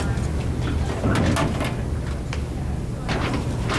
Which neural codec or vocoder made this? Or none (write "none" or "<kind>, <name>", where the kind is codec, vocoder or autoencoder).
none